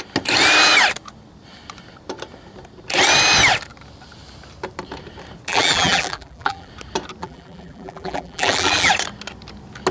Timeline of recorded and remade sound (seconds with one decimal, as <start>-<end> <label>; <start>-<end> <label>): 0.0-5.5 recorded; 5.5-6.7 remade; 6.7-7.2 recorded; 7.2-8.9 remade; 8.9-9.9 recorded